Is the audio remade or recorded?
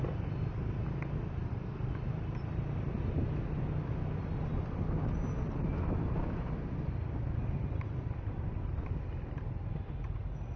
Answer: recorded